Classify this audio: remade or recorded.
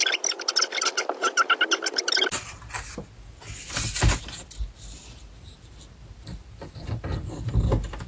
recorded